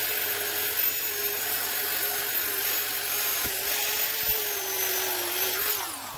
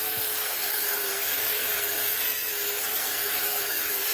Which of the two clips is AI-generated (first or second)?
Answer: second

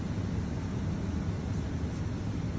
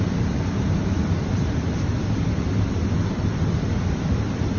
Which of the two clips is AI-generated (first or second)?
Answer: second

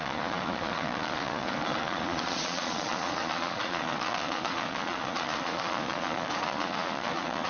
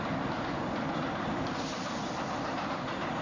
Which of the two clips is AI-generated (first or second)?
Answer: first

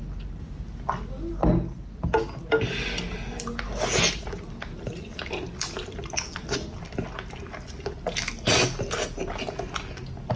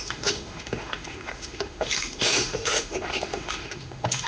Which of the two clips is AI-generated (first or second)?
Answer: second